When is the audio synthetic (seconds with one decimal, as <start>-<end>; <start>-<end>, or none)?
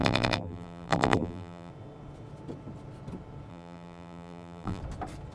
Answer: 0.0-1.7; 3.5-4.8